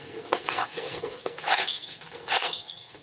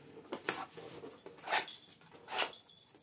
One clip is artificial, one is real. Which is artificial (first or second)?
first